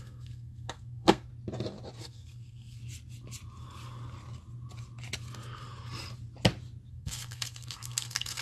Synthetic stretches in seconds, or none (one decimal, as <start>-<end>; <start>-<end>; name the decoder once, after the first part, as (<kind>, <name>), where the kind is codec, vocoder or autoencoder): 0.0-1.3 (codec, SNAC); 2.0-2.8; 6.9-8.4